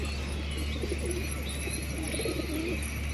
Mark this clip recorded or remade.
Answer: recorded